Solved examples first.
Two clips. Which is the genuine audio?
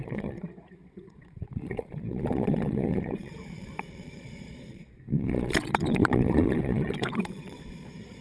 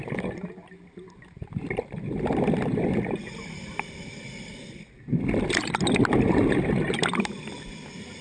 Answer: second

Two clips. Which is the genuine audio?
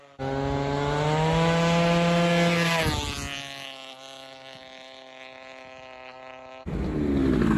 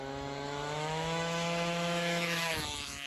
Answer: first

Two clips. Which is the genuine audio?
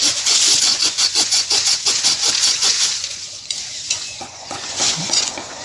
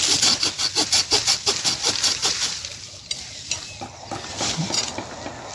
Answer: second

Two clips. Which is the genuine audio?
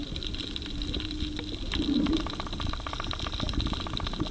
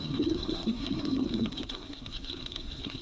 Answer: first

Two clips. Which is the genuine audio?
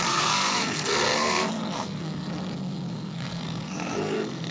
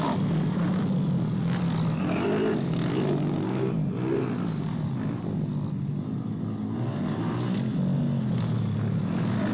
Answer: second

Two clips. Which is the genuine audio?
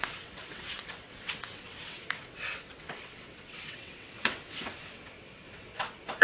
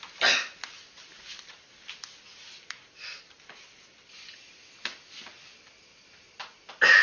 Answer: second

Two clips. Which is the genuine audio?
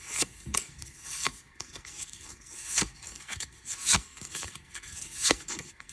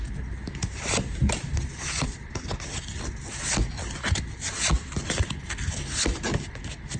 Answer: second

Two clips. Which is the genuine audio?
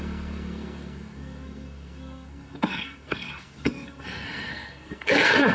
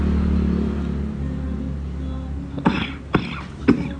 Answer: second